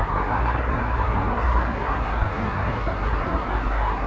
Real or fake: fake